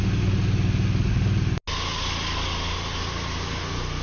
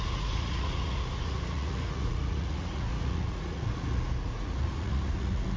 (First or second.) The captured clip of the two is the first